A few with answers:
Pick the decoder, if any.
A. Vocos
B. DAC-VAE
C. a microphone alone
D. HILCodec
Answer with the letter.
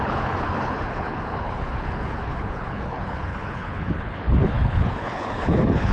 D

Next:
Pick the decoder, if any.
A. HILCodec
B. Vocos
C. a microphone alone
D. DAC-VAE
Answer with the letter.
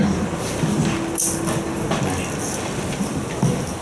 C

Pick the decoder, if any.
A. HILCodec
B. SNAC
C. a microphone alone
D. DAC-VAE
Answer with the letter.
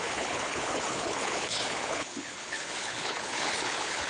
A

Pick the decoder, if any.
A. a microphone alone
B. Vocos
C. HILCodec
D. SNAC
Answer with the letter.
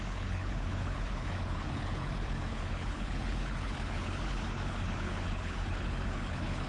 C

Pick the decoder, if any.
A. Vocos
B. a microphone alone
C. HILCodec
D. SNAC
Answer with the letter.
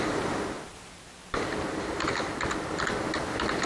B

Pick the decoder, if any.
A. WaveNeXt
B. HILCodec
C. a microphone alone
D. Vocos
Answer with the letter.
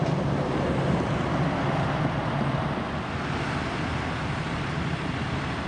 C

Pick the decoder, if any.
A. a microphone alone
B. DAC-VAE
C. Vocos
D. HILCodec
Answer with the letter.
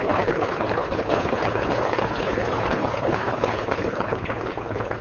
D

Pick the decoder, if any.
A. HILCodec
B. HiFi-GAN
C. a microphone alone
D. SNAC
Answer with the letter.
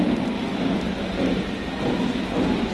C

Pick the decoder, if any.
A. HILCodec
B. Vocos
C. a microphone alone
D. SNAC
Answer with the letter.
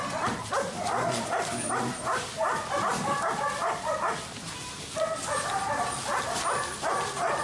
C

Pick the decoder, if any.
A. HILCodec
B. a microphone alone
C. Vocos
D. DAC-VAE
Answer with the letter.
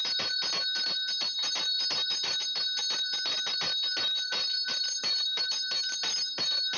B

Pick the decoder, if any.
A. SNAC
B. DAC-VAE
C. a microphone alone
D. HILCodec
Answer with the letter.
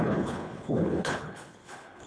D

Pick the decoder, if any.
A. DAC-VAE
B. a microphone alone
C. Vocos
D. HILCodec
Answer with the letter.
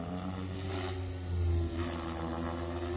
B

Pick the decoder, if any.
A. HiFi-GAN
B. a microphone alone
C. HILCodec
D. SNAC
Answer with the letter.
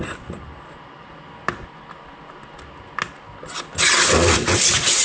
B